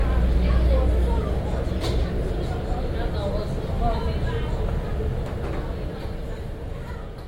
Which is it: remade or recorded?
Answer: recorded